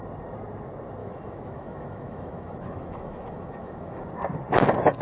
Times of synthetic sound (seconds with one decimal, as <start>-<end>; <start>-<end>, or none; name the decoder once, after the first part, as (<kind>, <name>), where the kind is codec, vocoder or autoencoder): 1.0-4.0 (autoencoder, DAC-VAE)